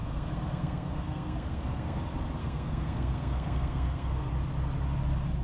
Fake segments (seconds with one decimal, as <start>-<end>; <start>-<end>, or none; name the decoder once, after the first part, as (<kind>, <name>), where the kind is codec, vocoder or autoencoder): 0.0-2.0 (codec, SNAC); 2.4-4.3